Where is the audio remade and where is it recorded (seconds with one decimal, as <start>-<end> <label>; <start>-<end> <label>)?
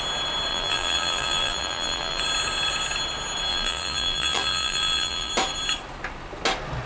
0.0-0.5 recorded; 0.5-2.2 remade; 2.2-3.5 recorded; 3.5-5.3 remade; 5.3-6.9 recorded